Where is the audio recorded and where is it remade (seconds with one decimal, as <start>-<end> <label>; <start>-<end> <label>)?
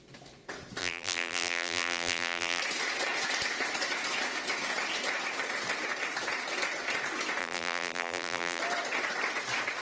0.0-0.8 recorded; 0.8-2.6 remade; 2.6-7.4 recorded; 7.4-8.6 remade; 8.6-9.8 recorded